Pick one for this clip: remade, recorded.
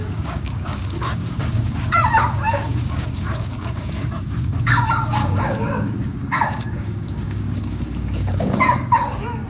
remade